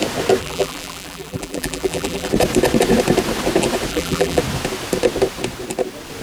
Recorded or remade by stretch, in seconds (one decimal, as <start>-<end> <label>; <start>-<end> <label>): 0.0-0.4 recorded; 0.4-2.3 remade; 2.3-3.9 recorded; 3.9-4.4 remade; 4.4-6.2 recorded